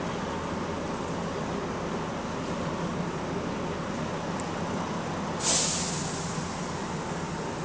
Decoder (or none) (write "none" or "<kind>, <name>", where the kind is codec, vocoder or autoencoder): none